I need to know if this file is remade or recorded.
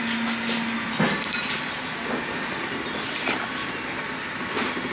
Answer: recorded